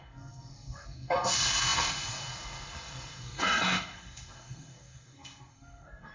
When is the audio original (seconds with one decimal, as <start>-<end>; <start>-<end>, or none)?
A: none